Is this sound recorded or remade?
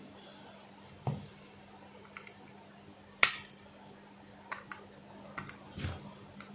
recorded